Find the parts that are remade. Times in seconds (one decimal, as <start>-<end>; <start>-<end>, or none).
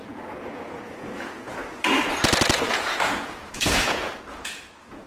0.0-1.6; 2.7-5.1